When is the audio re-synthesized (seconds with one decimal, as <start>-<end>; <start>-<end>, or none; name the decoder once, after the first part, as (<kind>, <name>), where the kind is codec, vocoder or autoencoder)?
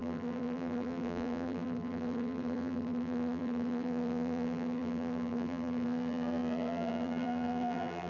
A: 0.0-8.1 (vocoder, BigVGAN v2)